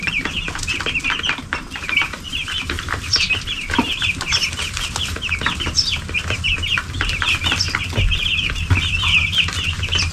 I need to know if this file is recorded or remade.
remade